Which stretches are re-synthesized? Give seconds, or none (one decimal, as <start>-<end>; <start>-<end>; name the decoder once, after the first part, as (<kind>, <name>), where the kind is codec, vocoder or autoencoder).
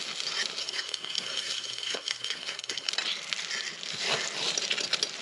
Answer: 0.6-2.9 (codec, SNAC)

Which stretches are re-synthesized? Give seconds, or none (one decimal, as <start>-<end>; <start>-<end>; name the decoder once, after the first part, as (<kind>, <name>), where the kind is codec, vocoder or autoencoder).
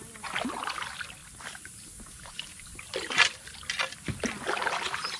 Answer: none